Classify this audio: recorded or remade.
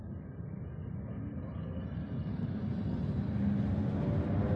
recorded